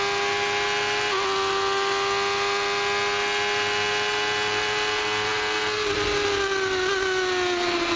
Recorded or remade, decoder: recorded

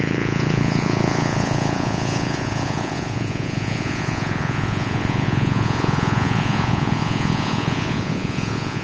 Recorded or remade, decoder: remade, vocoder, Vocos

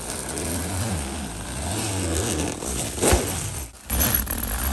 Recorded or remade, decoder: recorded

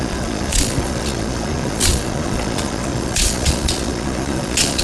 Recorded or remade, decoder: remade, vocoder, Vocos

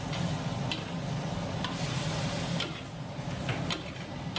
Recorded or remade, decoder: recorded